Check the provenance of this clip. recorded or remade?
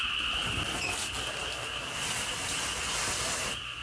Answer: recorded